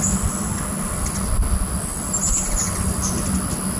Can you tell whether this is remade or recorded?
recorded